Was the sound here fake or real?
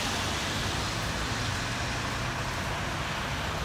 real